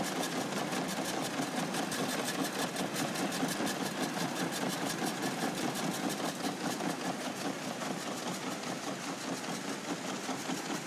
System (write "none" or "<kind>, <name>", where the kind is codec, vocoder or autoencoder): none